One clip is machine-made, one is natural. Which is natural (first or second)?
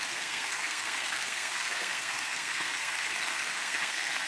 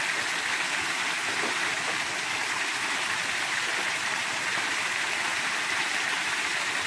second